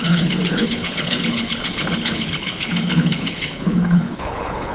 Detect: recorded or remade remade